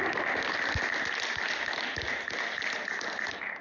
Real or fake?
real